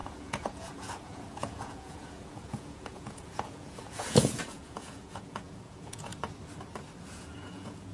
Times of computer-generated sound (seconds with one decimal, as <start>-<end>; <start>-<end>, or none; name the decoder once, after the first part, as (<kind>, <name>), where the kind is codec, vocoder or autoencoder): 0.0-6.1 (vocoder, Vocos); 7.0-7.9